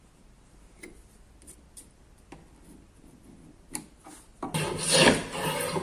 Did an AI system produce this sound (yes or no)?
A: no